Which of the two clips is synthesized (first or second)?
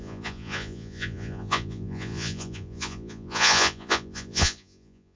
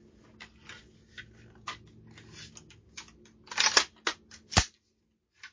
first